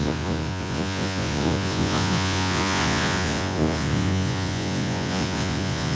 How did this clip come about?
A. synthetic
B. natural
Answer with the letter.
A